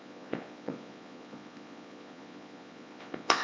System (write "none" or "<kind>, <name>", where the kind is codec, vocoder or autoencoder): vocoder, Vocos